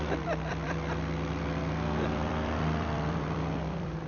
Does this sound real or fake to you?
fake